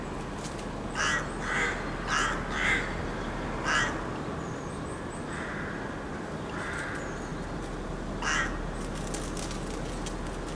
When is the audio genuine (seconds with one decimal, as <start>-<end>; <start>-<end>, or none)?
0.0-10.6